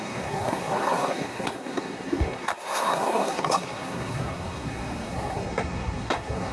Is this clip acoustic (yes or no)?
no